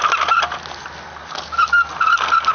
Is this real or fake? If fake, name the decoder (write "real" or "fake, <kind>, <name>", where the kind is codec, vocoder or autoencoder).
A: real